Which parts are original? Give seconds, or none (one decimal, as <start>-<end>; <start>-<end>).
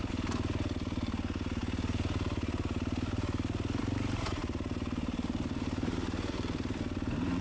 0.0-7.4